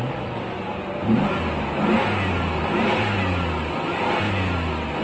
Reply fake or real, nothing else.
real